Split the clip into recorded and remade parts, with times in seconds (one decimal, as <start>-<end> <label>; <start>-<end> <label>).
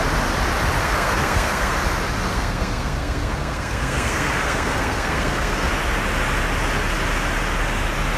0.0-0.8 recorded; 0.8-1.7 remade; 1.7-2.3 recorded; 2.3-5.7 remade; 5.7-8.2 recorded